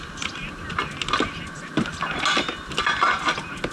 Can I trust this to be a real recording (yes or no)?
yes